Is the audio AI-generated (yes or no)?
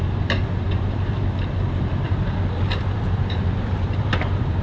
yes